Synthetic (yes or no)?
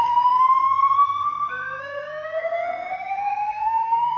yes